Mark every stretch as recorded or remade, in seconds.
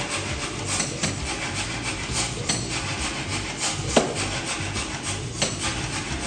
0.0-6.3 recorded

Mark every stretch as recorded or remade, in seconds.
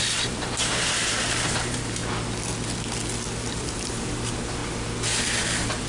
0.0-2.0 remade; 2.0-3.5 recorded; 3.5-4.6 remade; 4.6-5.2 recorded; 5.2-5.9 remade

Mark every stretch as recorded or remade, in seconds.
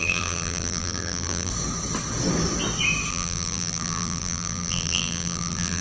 0.0-1.5 remade; 1.5-3.1 recorded; 3.1-5.8 remade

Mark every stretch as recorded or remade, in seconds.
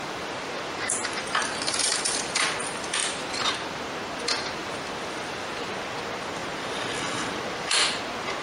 0.0-1.9 remade; 1.9-3.0 recorded; 3.0-5.7 remade; 5.7-8.4 recorded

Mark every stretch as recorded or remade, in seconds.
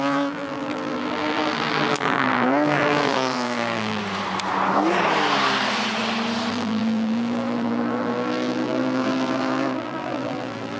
0.0-4.0 remade; 4.0-6.5 recorded; 6.5-10.8 remade